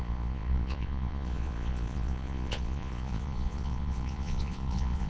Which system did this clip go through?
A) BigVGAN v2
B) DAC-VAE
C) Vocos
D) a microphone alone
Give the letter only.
C